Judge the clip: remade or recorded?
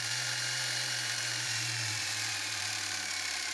remade